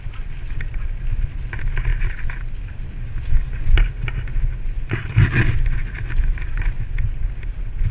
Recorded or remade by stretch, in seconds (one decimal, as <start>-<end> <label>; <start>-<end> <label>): 0.0-7.9 recorded